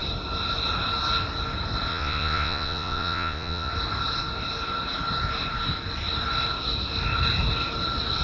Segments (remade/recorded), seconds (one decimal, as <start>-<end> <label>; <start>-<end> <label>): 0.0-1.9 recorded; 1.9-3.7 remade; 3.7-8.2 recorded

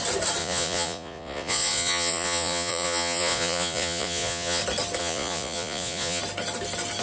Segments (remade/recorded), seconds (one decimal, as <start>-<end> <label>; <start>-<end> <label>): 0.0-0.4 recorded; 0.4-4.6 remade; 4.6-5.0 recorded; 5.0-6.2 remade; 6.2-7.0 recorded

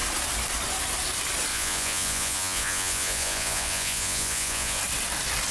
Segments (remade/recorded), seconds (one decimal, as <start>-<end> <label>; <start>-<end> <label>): 0.0-1.5 recorded; 1.5-4.8 remade; 4.8-5.5 recorded

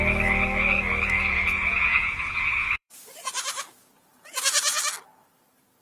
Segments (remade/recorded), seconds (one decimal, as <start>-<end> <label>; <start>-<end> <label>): 0.0-1.3 recorded; 1.3-4.8 remade; 4.8-5.8 recorded

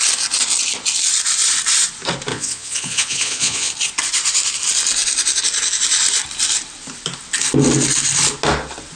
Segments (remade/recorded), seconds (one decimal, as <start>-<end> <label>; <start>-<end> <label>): 0.0-2.3 recorded; 2.3-3.7 remade; 3.7-9.0 recorded

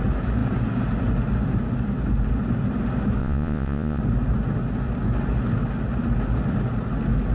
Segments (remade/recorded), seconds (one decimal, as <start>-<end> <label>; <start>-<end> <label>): 0.0-3.2 recorded; 3.2-4.0 remade; 4.0-7.3 recorded